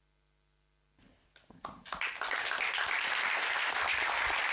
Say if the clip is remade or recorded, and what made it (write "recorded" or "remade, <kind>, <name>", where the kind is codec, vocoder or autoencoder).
recorded